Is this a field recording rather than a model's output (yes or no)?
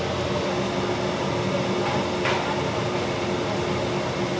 yes